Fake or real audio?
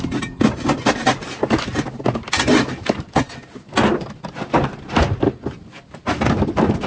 real